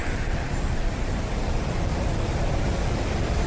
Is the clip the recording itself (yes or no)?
no